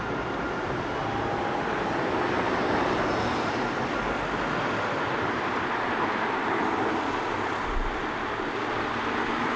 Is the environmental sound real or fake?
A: real